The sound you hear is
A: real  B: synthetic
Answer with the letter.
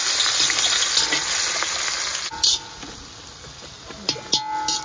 A